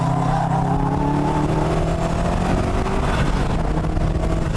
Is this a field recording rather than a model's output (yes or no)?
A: yes